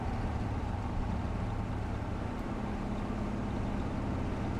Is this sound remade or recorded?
recorded